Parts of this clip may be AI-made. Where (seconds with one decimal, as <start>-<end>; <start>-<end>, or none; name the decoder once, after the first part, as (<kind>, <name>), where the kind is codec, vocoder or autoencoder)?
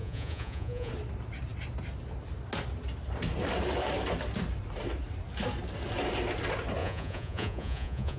0.0-0.9 (vocoder, Vocos); 6.8-8.2